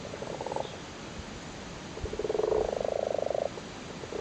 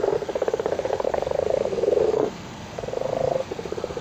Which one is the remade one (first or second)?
second